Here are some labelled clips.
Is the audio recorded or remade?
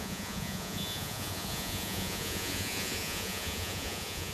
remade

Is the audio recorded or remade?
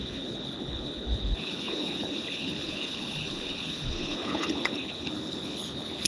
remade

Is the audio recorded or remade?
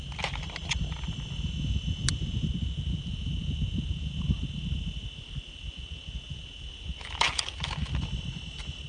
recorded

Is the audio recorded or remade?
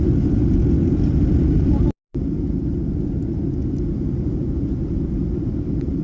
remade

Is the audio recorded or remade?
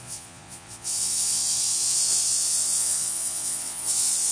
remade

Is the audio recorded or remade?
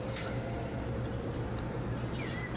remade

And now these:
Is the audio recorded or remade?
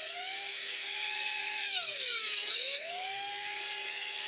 remade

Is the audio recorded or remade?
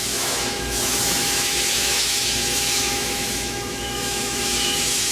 remade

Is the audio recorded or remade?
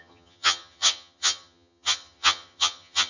remade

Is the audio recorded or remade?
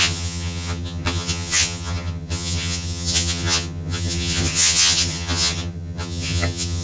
remade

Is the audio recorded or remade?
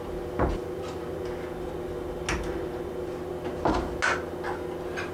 recorded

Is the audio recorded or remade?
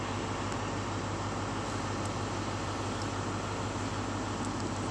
recorded